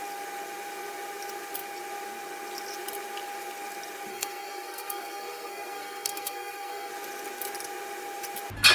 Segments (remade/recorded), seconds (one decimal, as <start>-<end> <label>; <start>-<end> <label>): 0.0-4.1 recorded; 4.1-6.9 remade; 6.9-8.7 recorded